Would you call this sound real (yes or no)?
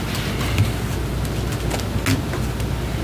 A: yes